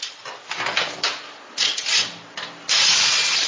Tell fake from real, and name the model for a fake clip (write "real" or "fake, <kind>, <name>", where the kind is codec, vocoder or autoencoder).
real